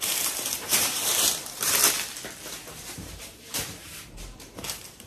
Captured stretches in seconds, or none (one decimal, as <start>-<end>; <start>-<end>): 1.8-2.6